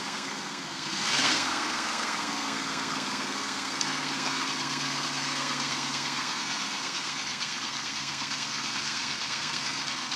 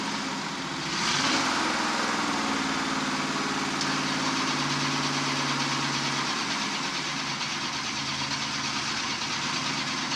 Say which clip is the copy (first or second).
first